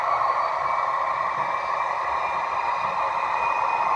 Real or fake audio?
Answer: real